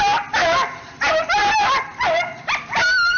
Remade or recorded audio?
recorded